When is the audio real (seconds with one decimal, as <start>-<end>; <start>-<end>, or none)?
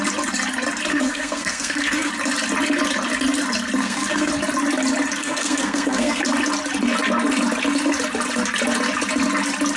0.0-0.9; 2.1-3.8; 4.3-5.2; 6.2-9.8